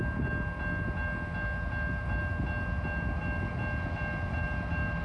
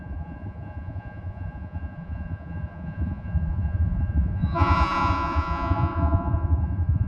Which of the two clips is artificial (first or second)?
second